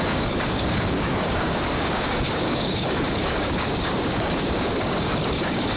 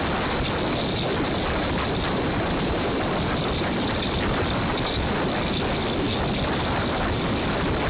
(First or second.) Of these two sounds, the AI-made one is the first